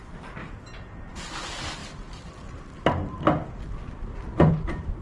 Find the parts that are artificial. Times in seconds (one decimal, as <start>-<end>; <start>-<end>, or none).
none